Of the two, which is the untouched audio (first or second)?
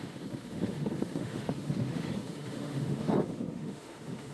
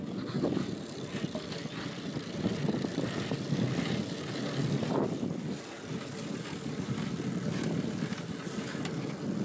second